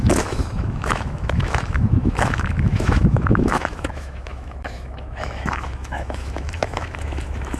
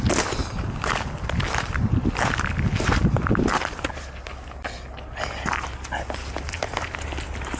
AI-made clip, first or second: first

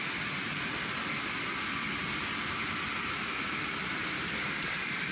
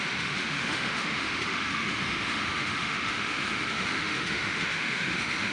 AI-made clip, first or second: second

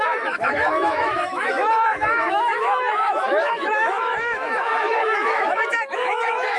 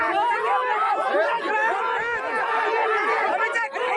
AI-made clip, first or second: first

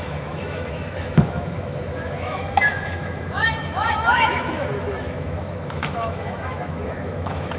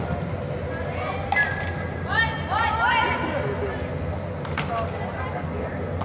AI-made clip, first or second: first